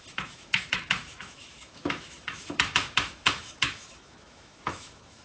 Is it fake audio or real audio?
fake